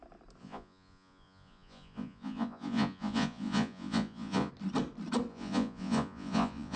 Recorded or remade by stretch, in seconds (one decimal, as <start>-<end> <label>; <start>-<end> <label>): 0.0-0.4 recorded; 0.4-4.5 remade; 4.5-5.3 recorded; 5.3-6.8 remade